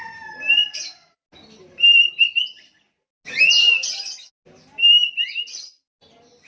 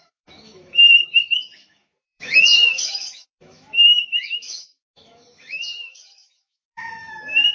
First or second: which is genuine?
first